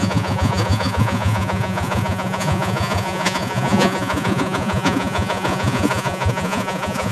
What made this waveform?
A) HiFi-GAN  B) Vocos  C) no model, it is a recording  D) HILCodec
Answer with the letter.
B